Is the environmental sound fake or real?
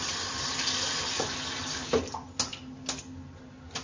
real